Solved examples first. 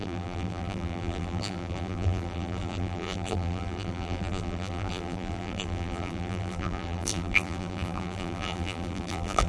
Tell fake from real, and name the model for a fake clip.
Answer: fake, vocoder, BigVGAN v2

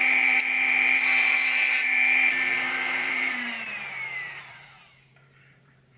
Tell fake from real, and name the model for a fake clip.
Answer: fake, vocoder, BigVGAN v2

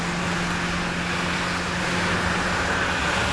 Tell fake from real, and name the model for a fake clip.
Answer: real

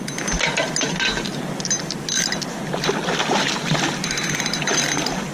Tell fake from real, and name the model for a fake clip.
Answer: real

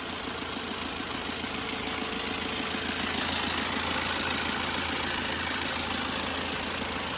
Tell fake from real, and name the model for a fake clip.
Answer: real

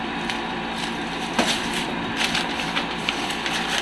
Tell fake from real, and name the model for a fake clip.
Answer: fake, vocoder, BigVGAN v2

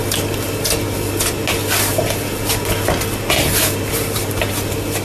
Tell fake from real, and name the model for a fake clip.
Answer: real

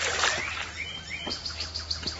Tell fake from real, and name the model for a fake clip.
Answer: fake, vocoder, BigVGAN v2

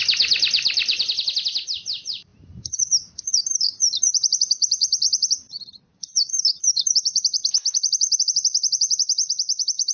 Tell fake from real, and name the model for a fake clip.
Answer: fake, vocoder, BigVGAN v2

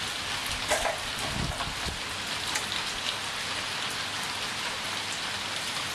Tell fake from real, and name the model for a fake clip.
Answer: real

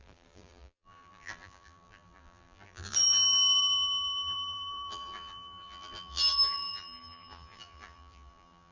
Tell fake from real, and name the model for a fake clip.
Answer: fake, vocoder, BigVGAN v2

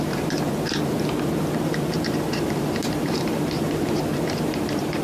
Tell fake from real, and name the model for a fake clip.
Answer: fake, vocoder, BigVGAN v2